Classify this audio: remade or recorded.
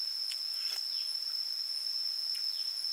recorded